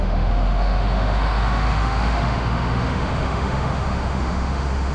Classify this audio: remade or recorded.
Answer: remade